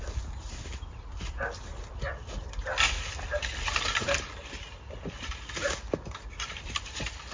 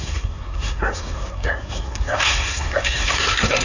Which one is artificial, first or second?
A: second